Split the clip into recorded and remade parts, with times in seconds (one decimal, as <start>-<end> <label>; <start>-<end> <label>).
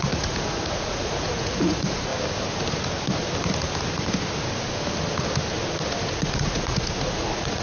0.0-2.1 remade; 2.1-6.0 recorded; 6.0-7.6 remade